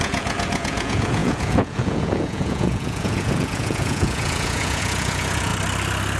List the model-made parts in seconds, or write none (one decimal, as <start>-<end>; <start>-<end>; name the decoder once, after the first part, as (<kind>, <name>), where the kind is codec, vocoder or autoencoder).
0.0-5.5 (vocoder, Vocos)